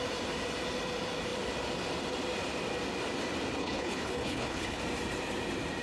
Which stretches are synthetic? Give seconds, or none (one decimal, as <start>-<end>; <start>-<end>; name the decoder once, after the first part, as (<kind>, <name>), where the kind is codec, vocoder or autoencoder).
3.6-4.8 (codec, HILCodec)